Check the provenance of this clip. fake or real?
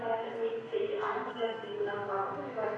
fake